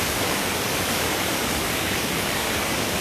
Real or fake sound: fake